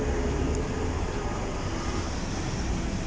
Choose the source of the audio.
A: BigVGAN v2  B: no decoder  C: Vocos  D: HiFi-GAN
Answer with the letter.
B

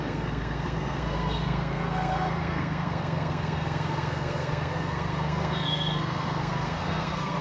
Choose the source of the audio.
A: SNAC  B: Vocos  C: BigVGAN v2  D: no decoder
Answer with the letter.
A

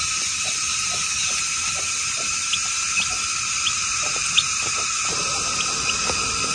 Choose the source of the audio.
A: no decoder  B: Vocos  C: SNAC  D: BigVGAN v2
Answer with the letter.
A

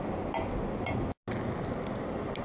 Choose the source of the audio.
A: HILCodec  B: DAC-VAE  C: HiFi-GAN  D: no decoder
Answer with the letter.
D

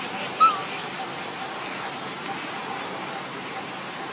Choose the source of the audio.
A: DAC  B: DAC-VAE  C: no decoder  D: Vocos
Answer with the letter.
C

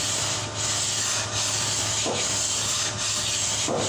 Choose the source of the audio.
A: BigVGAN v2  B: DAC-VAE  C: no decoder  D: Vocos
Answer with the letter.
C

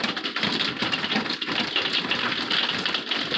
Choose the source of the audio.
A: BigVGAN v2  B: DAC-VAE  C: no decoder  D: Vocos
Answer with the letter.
C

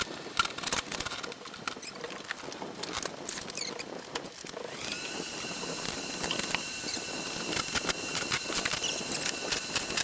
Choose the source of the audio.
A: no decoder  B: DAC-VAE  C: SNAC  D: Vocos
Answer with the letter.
A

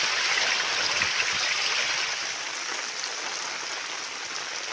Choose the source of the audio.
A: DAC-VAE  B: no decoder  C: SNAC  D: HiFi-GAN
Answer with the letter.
B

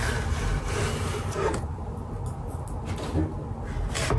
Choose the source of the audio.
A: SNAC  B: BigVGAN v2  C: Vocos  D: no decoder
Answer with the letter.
D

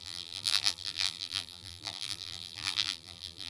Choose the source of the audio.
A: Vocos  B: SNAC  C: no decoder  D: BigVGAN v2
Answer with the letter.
D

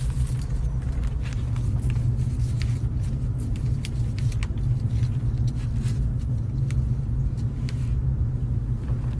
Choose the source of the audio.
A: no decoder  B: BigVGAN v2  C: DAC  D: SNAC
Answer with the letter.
A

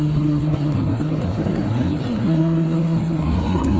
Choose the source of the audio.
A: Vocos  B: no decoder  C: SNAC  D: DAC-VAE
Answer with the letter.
C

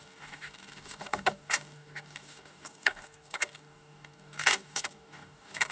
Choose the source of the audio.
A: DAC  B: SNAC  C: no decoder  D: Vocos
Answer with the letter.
A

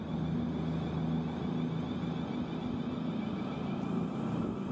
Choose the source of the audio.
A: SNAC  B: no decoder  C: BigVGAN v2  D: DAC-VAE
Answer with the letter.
B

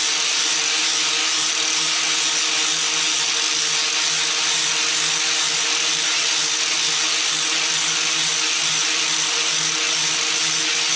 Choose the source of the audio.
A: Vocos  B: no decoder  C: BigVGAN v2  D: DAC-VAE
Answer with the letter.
B